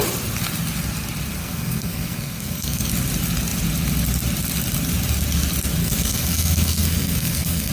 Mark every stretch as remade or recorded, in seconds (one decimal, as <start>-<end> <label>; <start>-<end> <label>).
0.0-1.4 recorded; 1.4-2.9 remade; 2.9-5.8 recorded; 5.8-7.7 remade